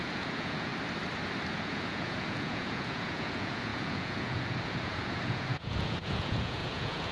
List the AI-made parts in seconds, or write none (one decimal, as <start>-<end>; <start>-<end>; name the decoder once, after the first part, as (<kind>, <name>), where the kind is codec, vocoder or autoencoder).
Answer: 0.0-0.7 (vocoder, Vocos); 1.5-7.1